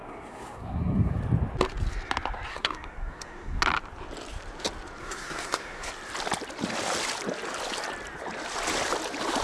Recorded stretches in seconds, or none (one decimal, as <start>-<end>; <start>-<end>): 1.2-2.5; 3.6-5.0; 5.9-9.4